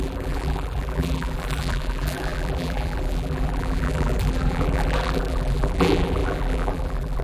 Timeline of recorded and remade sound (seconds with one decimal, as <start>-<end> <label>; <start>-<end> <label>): 0.0-7.2 remade